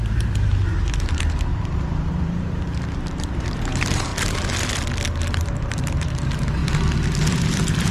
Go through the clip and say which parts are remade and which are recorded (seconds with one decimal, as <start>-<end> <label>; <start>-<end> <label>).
0.0-4.1 remade; 4.1-5.2 recorded; 5.2-6.6 remade; 6.6-7.3 recorded; 7.3-7.9 remade

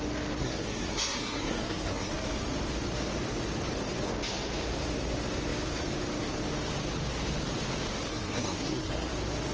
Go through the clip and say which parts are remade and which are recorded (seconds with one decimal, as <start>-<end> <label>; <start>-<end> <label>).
0.0-0.4 recorded; 0.4-2.1 remade; 2.1-8.1 recorded; 8.1-9.1 remade; 9.1-9.5 recorded

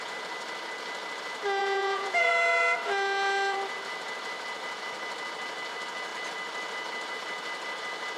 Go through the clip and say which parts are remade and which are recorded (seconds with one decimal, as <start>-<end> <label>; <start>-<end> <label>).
0.0-1.6 recorded; 1.6-2.3 remade; 2.3-8.2 recorded

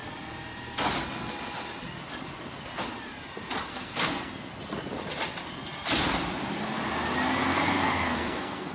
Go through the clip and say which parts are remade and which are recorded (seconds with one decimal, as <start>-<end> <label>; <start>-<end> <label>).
0.0-3.7 recorded; 3.7-4.3 remade; 4.3-7.4 recorded; 7.4-8.7 remade

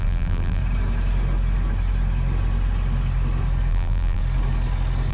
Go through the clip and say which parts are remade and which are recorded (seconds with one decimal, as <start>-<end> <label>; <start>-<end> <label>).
0.0-0.6 remade; 0.6-3.7 recorded; 3.7-4.2 remade; 4.2-5.1 recorded

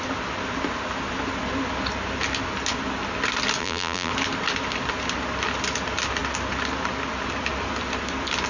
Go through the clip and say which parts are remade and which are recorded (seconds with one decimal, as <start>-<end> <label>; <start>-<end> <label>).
0.0-3.6 recorded; 3.6-4.1 remade; 4.1-8.5 recorded

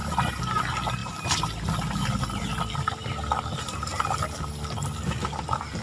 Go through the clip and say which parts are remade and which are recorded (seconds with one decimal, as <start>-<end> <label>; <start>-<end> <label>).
0.0-0.6 remade; 0.6-1.0 recorded; 1.0-1.9 remade; 1.9-5.8 recorded

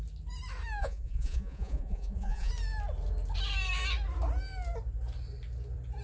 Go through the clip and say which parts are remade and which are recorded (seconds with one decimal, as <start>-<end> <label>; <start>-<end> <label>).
0.0-0.8 recorded; 0.8-2.5 remade; 2.5-6.0 recorded